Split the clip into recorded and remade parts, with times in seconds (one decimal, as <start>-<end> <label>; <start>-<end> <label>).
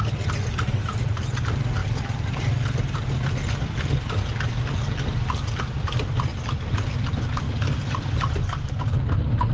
0.0-1.8 recorded; 1.8-3.3 remade; 3.3-9.5 recorded